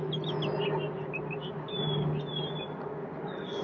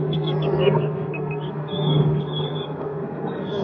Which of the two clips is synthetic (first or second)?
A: second